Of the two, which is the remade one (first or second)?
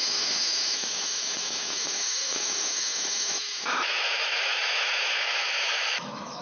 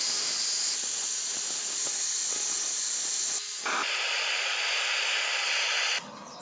first